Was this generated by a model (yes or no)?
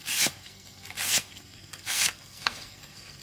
yes